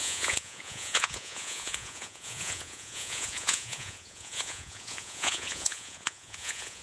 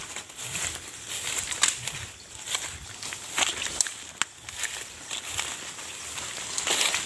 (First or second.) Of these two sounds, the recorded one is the second